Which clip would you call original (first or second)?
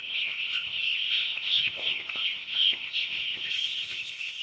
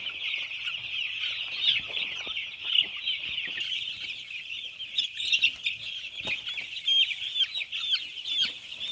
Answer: second